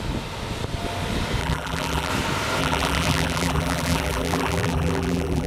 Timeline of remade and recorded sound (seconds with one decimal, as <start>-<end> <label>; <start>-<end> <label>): 0.0-1.4 recorded; 1.4-2.1 remade; 2.1-2.6 recorded; 2.6-5.5 remade